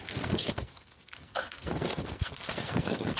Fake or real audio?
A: fake